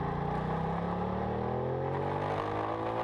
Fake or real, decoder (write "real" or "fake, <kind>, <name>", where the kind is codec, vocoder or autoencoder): real